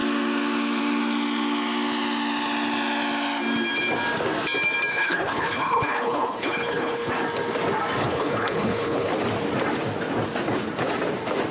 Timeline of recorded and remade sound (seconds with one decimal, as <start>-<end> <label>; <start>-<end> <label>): 0.0-4.9 recorded; 4.9-7.1 remade; 7.1-8.0 recorded; 8.0-9.1 remade; 9.1-11.5 recorded